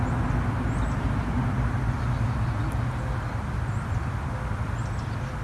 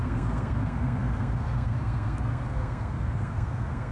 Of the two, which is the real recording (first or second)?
first